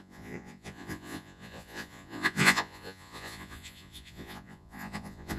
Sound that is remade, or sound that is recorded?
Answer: remade